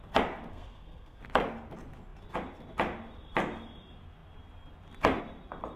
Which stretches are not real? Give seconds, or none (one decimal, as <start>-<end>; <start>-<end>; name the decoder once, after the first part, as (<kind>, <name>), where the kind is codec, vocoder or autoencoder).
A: 0.5-1.2 (codec, SNAC)